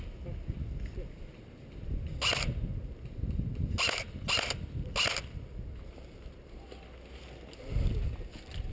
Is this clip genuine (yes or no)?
yes